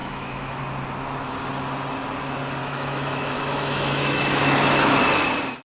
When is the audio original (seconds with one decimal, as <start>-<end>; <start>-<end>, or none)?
0.6-2.6; 5.0-5.6